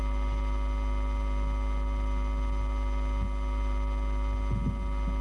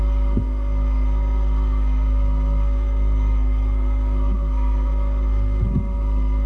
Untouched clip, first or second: first